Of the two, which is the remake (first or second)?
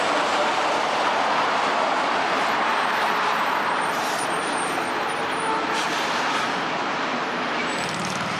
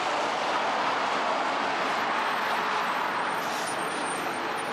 first